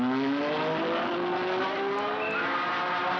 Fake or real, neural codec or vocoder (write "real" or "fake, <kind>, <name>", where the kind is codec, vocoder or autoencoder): real